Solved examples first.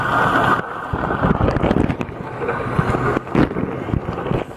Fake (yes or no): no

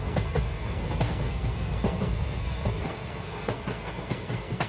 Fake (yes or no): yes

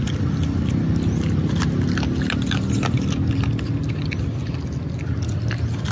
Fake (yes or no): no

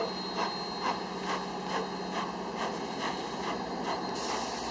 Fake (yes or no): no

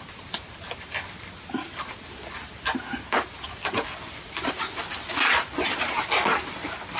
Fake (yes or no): no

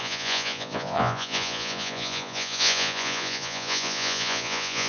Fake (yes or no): yes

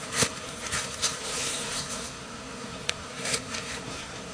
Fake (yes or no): yes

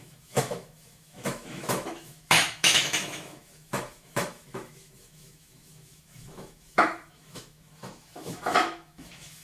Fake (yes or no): yes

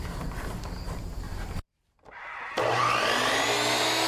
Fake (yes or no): no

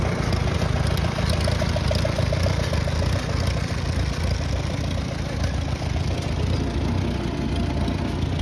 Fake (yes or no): no